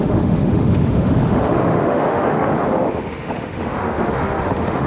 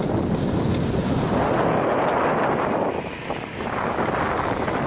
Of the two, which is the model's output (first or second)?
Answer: first